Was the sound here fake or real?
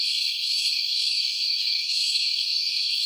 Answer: fake